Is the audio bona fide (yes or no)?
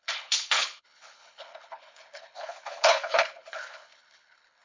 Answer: no